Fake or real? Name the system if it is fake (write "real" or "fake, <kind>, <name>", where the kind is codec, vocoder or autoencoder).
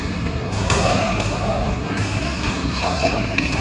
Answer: fake, codec, SNAC